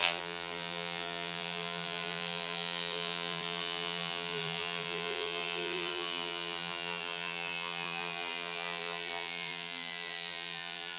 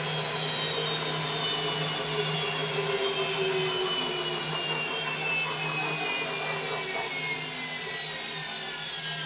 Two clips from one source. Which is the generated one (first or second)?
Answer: first